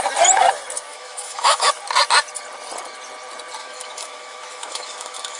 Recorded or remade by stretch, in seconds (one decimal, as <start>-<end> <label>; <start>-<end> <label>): 0.0-0.9 recorded; 0.9-1.7 remade; 1.7-3.6 recorded; 3.6-5.4 remade